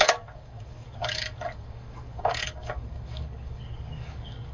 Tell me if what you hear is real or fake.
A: fake